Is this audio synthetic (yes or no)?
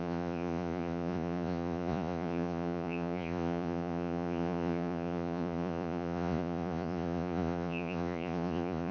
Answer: yes